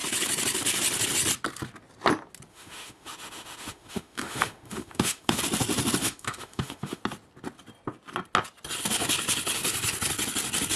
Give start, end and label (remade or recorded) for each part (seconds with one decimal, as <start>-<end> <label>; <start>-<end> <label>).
0.0-2.5 recorded; 2.5-5.4 remade; 5.4-6.0 recorded; 6.0-7.0 remade; 7.0-10.8 recorded